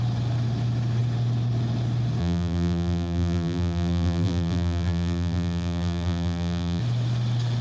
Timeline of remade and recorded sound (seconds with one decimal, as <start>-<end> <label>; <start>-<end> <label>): 0.0-2.2 recorded; 2.2-6.8 remade; 6.8-7.6 recorded